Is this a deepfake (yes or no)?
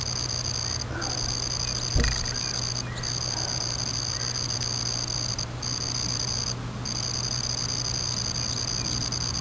no